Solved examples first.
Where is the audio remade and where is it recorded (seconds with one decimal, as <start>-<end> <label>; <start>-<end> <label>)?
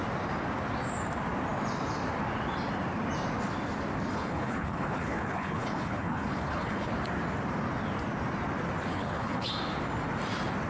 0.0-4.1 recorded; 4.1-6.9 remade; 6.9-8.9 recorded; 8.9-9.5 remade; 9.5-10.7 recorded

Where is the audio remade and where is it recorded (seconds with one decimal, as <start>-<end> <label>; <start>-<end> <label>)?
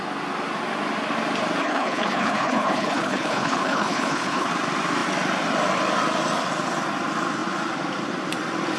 0.0-1.6 recorded; 1.6-4.5 remade; 4.5-8.8 recorded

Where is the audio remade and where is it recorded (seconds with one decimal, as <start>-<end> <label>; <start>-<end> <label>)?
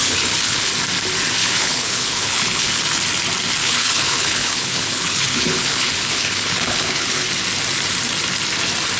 0.0-0.7 remade; 0.7-1.4 recorded; 1.4-2.8 remade; 2.8-3.6 recorded; 3.6-7.3 remade; 7.3-9.0 recorded